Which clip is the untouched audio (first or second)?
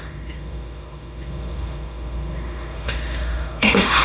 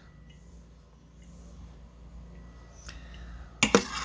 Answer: second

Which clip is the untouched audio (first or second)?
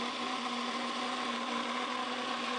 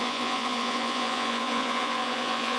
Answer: first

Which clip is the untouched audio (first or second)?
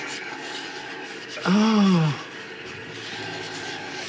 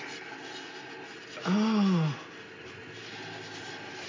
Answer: second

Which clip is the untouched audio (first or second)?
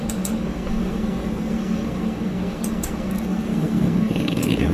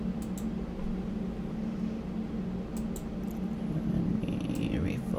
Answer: second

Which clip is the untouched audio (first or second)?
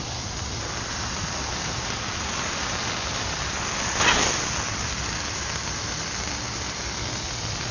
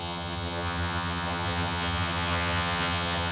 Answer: first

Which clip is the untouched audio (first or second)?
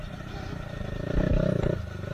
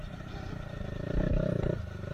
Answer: first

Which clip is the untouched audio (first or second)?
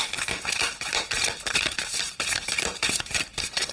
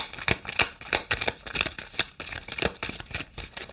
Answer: second